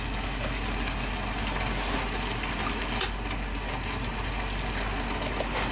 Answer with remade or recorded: recorded